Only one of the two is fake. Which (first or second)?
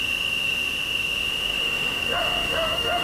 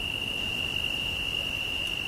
first